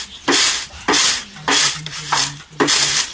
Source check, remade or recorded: recorded